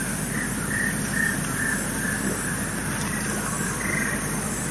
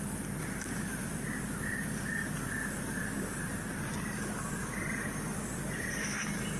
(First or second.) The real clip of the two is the second